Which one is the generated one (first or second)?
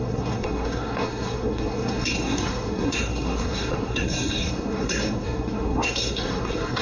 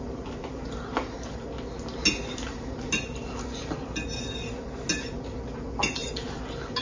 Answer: first